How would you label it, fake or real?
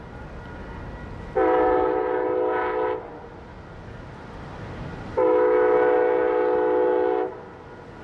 real